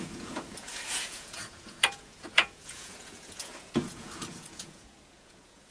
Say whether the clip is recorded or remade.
remade